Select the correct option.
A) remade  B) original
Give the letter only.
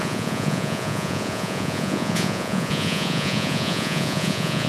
A